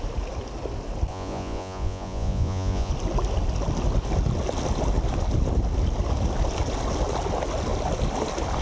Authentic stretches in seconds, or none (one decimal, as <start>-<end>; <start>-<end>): 0.0-1.1; 2.9-8.6